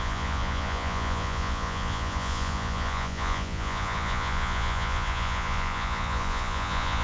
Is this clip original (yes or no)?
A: no